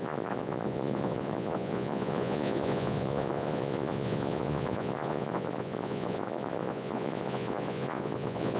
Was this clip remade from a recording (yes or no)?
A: yes